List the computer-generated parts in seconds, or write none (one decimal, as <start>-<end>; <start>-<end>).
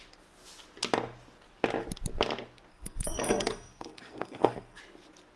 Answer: 2.7-4.8